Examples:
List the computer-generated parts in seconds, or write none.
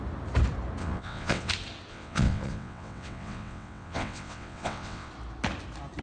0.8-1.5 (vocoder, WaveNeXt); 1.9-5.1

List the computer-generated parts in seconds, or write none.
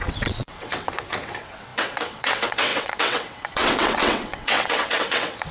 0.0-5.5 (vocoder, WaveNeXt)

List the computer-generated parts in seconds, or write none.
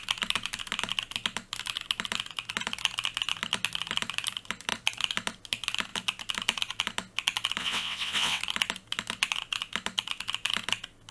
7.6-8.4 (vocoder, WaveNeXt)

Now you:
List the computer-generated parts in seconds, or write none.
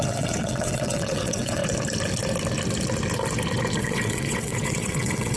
0.0-1.6 (vocoder, WaveNeXt); 3.8-5.4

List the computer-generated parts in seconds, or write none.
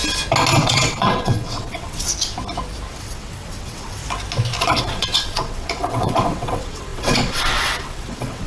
0.6-2.1 (vocoder, WaveNeXt); 2.9-4.0; 4.6-8.5